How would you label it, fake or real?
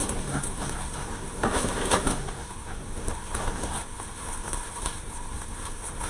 fake